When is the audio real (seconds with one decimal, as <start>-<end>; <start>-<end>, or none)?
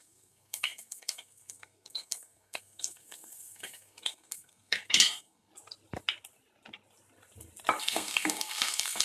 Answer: 5.5-7.8